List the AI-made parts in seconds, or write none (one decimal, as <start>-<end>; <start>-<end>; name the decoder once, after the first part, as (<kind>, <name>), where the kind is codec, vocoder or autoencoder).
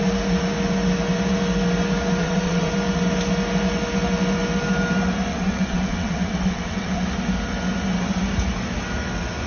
2.2-2.7 (vocoder, WaveNeXt); 5.3-7.0